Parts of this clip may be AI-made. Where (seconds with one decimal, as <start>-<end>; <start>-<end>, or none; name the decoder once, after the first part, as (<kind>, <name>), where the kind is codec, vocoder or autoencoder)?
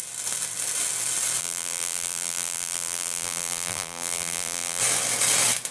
1.4-4.8 (vocoder, BigVGAN v2)